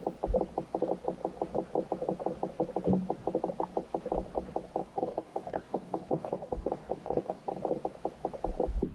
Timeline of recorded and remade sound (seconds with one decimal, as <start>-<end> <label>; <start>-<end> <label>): 0.0-4.8 recorded; 4.8-7.5 remade; 7.5-8.9 recorded